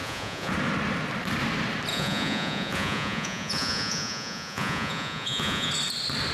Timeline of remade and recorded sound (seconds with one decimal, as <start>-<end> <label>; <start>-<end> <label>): 0.0-0.5 remade; 0.5-1.9 recorded; 1.9-5.7 remade; 5.7-6.3 recorded